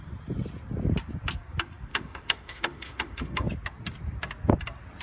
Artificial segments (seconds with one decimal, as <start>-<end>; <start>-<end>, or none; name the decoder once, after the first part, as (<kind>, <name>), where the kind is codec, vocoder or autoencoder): 1.9-3.5 (autoencoder, DAC-VAE)